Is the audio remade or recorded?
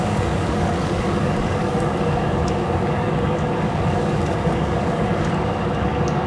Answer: remade